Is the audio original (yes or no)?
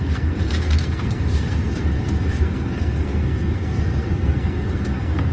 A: no